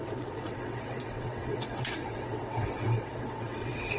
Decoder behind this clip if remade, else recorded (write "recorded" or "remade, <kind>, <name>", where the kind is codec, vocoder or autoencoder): remade, vocoder, WaveNeXt